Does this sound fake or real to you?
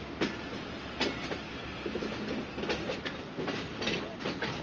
real